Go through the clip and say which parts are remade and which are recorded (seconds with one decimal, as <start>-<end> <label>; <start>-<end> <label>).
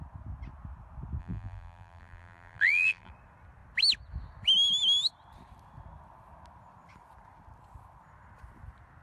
0.0-1.2 recorded; 1.2-3.1 remade; 3.1-9.0 recorded